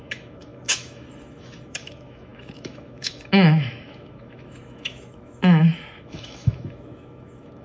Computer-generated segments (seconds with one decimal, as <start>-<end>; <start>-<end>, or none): 0.0-7.6